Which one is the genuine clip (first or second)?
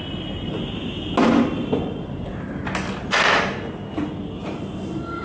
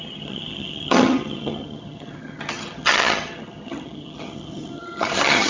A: first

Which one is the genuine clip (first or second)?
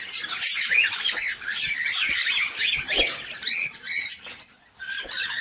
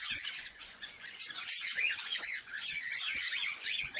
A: first